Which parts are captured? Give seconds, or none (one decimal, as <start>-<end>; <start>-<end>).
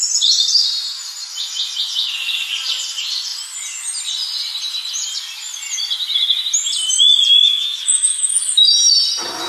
0.0-7.4; 8.4-9.5